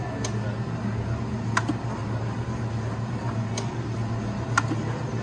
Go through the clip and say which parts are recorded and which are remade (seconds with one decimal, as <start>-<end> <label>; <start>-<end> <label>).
0.0-5.2 recorded